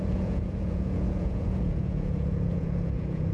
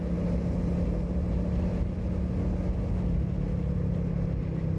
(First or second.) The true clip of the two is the second